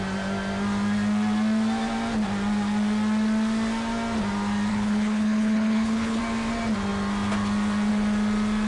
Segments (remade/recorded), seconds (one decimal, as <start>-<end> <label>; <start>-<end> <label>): 0.0-4.7 recorded; 4.7-6.2 remade; 6.2-8.7 recorded